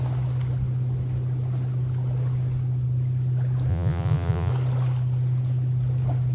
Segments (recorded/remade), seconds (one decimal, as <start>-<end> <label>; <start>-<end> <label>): 0.0-3.7 recorded; 3.7-4.5 remade; 4.5-6.3 recorded